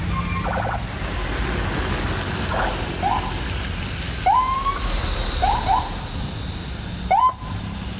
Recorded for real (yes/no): yes